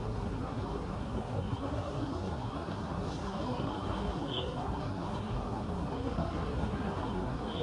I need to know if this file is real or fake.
fake